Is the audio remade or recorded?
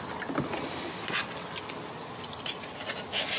recorded